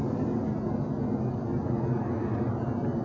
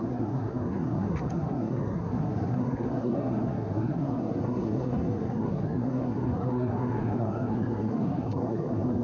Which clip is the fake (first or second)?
second